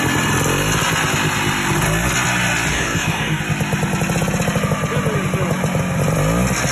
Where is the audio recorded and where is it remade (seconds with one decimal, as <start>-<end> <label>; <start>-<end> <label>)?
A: 0.0-2.7 recorded; 2.7-3.4 remade; 3.4-6.7 recorded